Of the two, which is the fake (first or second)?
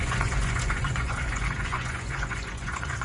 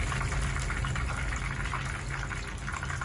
first